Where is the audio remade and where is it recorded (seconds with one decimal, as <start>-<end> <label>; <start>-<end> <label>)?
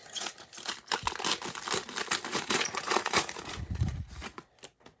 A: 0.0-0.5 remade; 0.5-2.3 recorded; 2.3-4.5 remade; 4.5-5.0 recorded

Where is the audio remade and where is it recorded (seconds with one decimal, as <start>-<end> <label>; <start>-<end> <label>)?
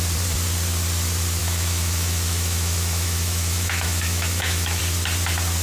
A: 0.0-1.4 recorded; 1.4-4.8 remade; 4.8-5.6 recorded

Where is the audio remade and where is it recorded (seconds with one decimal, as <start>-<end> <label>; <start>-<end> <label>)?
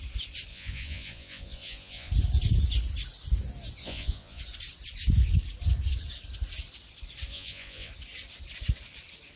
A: 0.0-0.5 recorded; 0.5-2.1 remade; 2.1-3.8 recorded; 3.8-4.4 remade; 4.4-7.3 recorded; 7.3-7.9 remade; 7.9-9.4 recorded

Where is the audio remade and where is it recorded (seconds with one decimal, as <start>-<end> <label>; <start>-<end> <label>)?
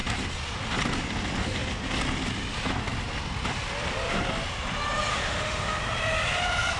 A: 0.0-5.1 recorded; 5.1-5.8 remade; 5.8-6.8 recorded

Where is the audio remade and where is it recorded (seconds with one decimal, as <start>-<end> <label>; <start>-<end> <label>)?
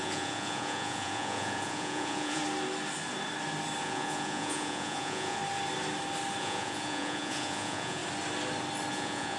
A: 0.0-2.4 remade; 2.4-3.8 recorded; 3.8-5.4 remade; 5.4-6.4 recorded; 6.4-8.0 remade; 8.0-8.9 recorded; 8.9-9.4 remade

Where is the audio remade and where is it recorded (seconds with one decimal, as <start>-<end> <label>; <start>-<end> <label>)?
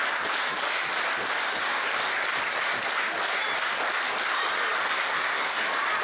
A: 0.0-4.9 recorded; 4.9-5.6 remade; 5.6-6.0 recorded